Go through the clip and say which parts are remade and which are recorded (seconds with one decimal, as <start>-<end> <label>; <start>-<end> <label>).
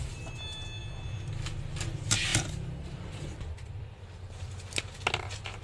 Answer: 0.0-5.6 recorded